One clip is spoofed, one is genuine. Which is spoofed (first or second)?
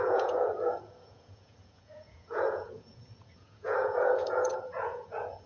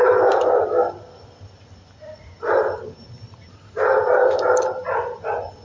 first